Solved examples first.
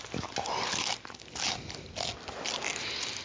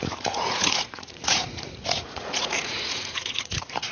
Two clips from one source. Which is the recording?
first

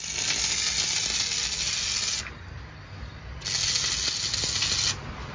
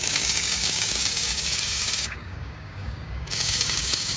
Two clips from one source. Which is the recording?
first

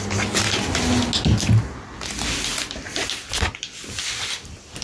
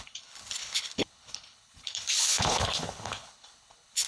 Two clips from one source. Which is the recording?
first